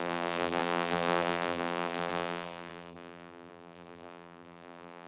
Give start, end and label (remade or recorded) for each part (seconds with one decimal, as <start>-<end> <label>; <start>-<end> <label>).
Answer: 0.0-5.1 remade